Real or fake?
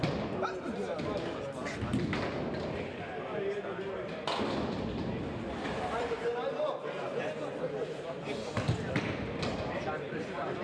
real